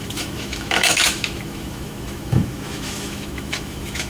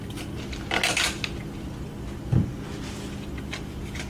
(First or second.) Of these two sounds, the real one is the second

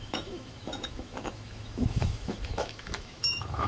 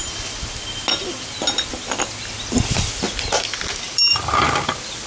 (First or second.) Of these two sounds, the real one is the second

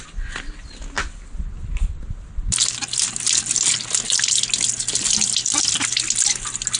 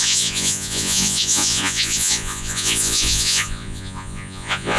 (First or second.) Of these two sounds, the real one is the first